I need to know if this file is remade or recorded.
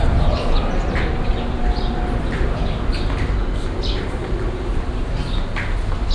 recorded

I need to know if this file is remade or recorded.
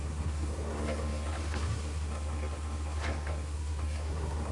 remade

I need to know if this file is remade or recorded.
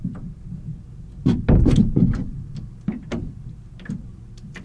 recorded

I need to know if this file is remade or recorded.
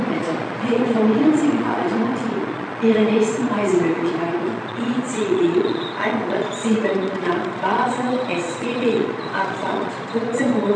remade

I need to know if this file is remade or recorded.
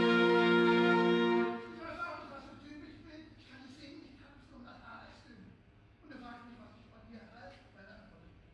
remade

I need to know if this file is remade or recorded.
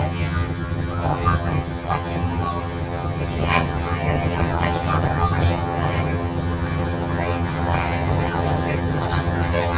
remade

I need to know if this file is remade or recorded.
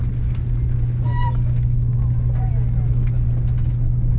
recorded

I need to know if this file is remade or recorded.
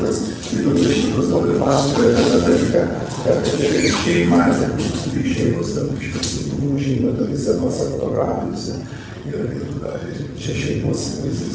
remade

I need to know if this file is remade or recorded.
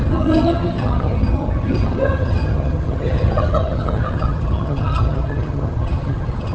remade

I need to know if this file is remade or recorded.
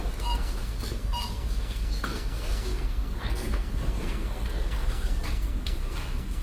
remade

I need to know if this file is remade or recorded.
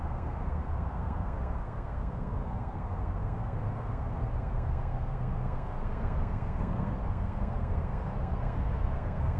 remade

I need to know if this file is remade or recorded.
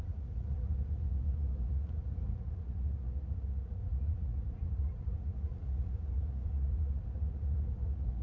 remade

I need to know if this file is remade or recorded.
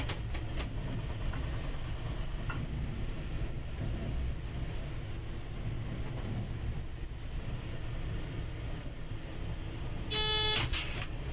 recorded